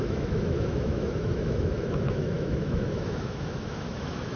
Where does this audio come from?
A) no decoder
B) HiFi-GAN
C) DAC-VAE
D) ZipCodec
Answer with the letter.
C